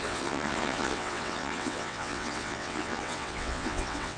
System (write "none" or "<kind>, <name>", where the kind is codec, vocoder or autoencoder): vocoder, WaveNeXt